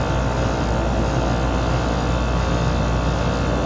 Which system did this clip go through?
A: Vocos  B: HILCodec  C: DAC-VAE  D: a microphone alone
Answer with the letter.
D